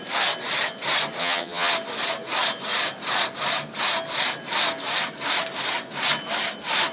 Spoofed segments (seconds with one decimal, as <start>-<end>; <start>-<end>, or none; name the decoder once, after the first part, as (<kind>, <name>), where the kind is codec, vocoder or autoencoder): 1.2-1.7 (vocoder, HiFi-GAN)